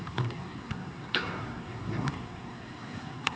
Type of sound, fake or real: fake